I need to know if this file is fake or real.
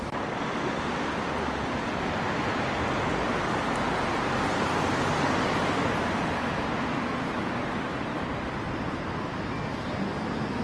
real